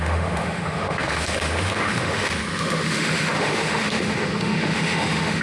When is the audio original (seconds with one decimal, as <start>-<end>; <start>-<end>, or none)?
none